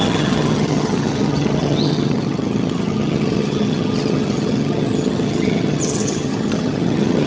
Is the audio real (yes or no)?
no